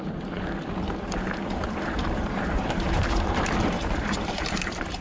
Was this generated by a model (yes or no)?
yes